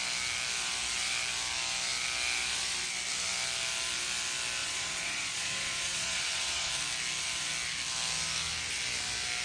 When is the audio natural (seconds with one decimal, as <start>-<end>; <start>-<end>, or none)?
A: 0.0-4.6; 6.7-9.4